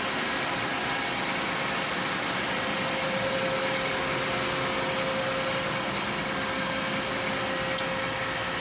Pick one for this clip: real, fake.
real